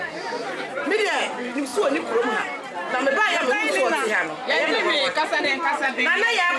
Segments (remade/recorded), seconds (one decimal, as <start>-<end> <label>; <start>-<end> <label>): 0.0-0.4 recorded; 0.4-1.2 remade; 1.2-6.6 recorded